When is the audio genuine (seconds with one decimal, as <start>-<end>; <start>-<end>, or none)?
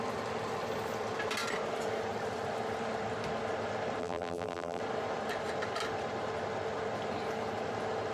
0.0-4.0; 4.8-8.1